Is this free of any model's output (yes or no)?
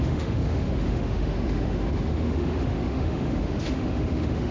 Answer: no